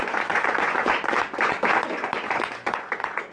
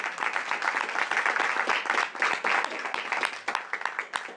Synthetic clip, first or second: first